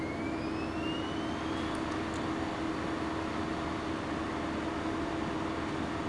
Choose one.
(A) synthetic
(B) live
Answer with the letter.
B